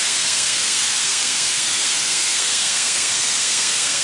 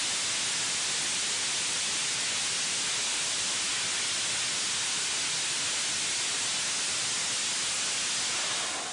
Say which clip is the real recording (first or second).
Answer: second